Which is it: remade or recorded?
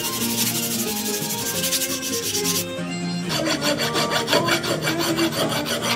recorded